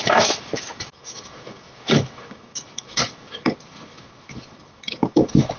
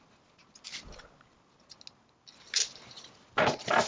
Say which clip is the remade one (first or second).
first